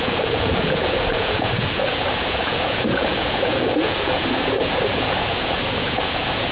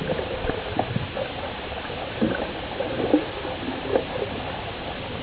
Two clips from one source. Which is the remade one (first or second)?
first